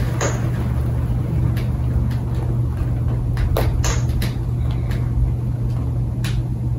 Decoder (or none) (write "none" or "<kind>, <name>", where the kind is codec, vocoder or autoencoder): none